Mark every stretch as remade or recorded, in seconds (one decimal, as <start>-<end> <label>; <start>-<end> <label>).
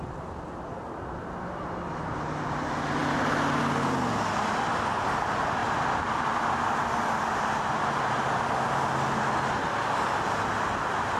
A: 0.0-5.6 recorded; 5.6-7.8 remade; 7.8-11.2 recorded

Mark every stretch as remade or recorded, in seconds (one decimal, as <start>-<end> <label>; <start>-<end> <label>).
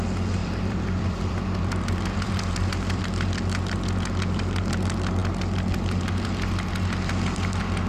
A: 0.0-0.4 recorded; 0.4-3.0 remade; 3.0-7.9 recorded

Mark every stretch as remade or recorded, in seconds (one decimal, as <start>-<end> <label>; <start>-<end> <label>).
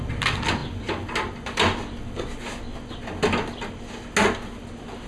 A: 0.0-5.1 recorded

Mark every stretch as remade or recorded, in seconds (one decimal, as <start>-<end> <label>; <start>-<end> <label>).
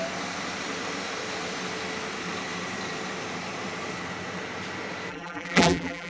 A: 0.0-5.1 recorded; 5.1-6.1 remade